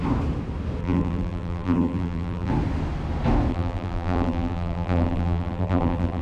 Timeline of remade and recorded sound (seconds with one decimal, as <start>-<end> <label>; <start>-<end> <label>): 0.0-0.8 recorded; 0.8-2.5 remade; 2.5-3.5 recorded; 3.5-6.2 remade